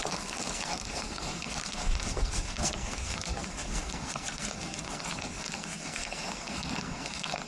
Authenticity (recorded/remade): remade